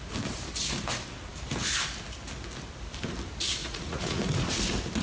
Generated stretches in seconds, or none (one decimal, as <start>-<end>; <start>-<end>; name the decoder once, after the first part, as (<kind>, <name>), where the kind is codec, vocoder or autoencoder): 3.6-4.2 (vocoder, Vocos)